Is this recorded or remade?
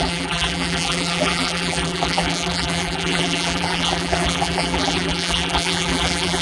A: remade